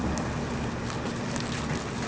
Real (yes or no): yes